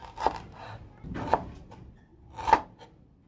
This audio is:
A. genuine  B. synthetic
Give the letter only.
A